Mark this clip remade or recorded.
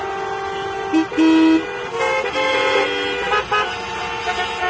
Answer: recorded